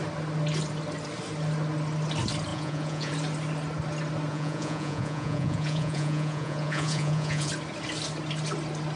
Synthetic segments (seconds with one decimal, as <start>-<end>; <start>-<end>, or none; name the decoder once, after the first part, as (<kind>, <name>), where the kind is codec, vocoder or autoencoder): 2.5-3.1 (vocoder, Vocos); 4.3-7.5